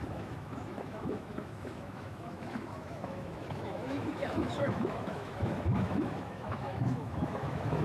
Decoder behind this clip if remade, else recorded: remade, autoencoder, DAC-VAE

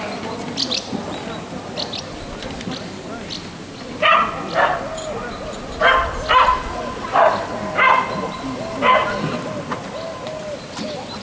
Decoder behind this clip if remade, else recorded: recorded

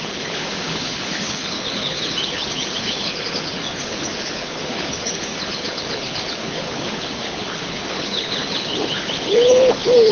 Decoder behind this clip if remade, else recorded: remade, codec, HILCodec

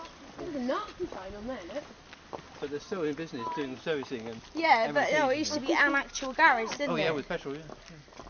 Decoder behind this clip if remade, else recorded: recorded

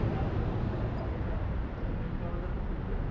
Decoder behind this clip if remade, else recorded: recorded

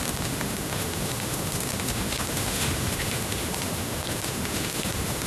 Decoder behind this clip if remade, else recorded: remade, autoencoder, DAC-VAE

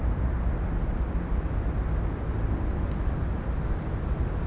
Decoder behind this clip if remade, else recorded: recorded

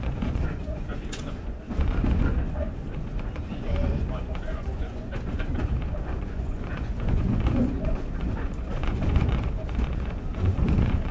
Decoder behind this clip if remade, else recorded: remade, vocoder, Vocos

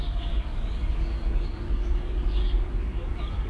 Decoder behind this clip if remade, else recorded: remade, codec, DAC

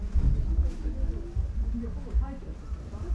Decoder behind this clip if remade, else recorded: recorded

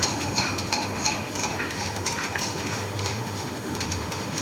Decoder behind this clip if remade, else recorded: remade, autoencoder, DAC-VAE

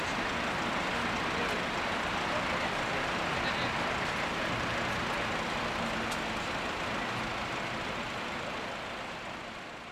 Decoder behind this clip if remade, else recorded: recorded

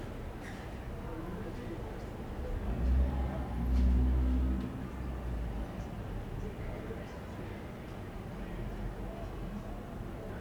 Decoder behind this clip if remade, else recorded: recorded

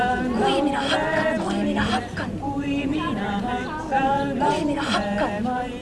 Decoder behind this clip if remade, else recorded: recorded